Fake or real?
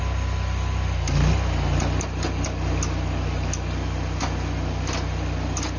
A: real